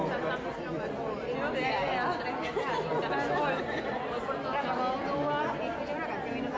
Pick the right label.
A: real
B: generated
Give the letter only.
A